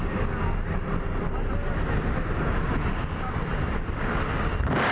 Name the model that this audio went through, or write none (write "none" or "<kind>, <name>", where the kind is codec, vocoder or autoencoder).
none